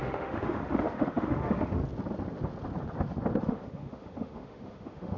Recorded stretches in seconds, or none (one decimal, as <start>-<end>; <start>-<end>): 1.8-3.4